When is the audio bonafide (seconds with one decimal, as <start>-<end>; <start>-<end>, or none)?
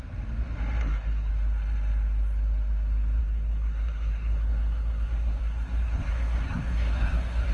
0.0-0.8; 1.3-3.2